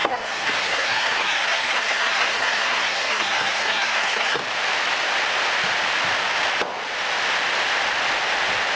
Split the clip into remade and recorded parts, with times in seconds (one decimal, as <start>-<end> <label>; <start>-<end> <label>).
0.0-4.4 remade; 4.4-8.8 recorded